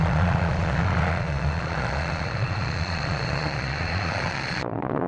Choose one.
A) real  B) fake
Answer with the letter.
B